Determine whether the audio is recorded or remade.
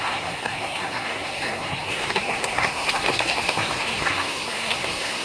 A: remade